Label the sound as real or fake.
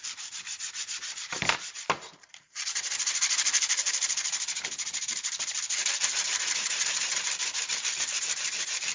fake